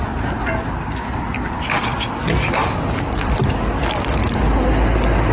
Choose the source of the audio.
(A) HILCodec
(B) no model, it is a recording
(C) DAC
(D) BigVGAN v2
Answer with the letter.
B